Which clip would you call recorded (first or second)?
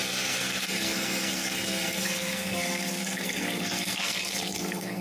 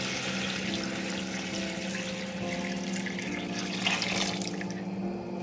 second